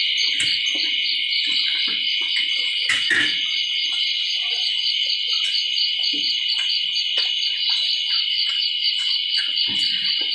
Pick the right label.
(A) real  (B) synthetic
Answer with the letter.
B